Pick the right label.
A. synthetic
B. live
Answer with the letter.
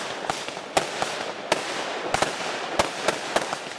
B